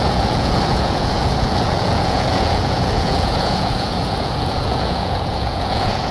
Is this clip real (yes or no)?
no